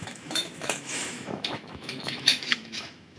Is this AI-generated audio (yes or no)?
yes